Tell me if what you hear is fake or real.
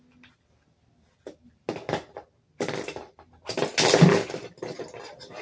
real